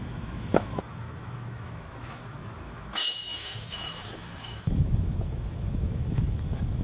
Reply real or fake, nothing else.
fake